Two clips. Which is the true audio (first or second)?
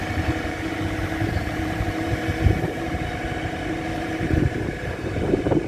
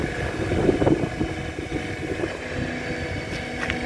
second